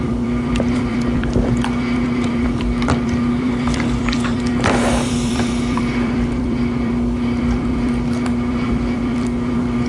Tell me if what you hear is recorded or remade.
remade